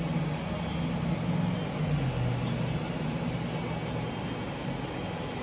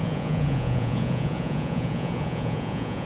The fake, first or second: second